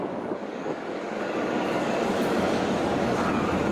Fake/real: fake